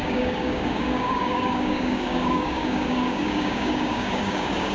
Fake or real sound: fake